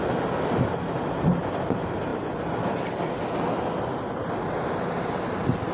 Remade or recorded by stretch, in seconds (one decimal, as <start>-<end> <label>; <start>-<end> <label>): 0.0-2.1 recorded; 2.1-3.0 remade; 3.0-5.7 recorded